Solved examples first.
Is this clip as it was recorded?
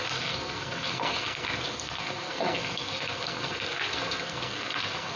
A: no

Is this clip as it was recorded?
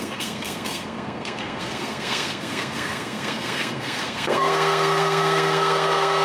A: no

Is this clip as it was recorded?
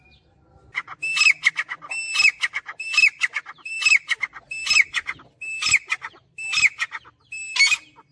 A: yes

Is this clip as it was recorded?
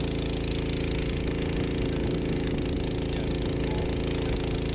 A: yes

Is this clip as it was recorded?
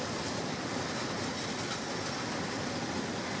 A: yes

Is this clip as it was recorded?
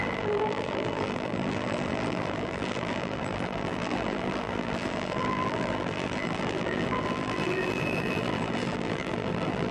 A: no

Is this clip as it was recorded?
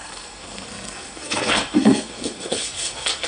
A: no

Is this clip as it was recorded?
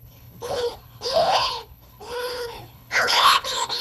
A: no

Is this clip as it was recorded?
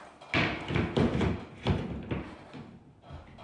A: yes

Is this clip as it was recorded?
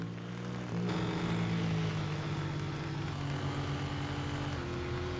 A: yes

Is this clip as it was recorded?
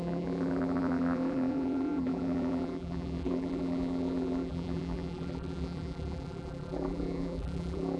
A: no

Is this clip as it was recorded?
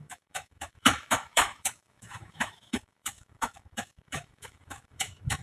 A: no